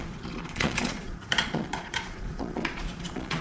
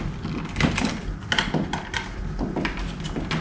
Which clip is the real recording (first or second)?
second